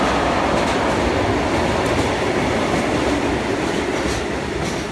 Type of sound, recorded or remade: recorded